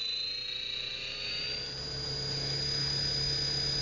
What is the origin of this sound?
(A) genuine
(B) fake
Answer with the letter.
A